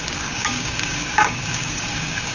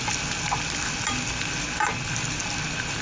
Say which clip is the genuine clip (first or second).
second